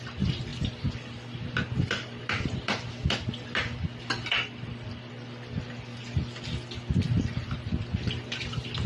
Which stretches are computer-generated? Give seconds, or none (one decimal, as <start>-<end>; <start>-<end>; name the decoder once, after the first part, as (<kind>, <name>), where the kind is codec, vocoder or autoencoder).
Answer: 0.0-8.9 (vocoder, BigVGAN v2)